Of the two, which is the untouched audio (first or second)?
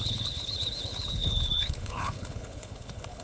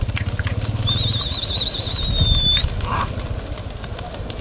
second